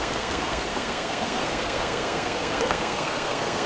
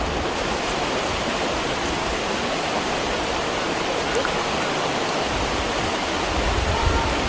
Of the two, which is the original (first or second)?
second